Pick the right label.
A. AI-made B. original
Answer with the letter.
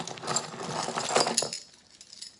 B